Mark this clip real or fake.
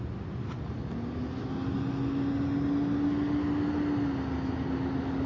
real